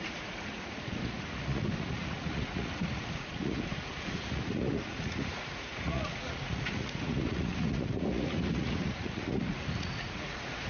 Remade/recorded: remade